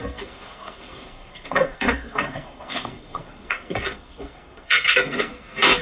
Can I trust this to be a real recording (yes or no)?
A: no